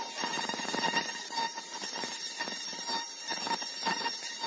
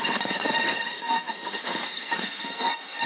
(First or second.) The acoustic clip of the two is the first